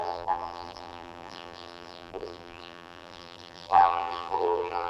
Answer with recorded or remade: remade